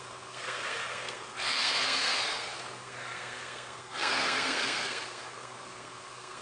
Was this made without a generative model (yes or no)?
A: no